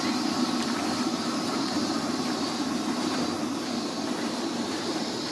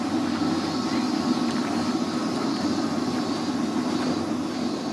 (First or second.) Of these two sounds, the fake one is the first